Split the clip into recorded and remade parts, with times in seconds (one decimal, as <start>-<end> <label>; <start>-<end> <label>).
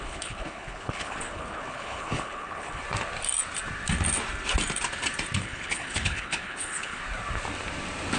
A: 0.0-2.8 remade; 2.8-5.4 recorded; 5.4-7.0 remade; 7.0-8.2 recorded